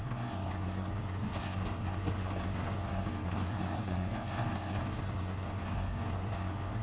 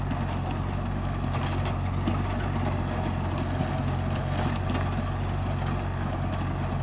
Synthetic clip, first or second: first